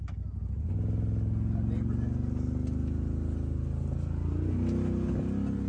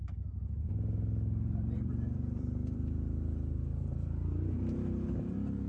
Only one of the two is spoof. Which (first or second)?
second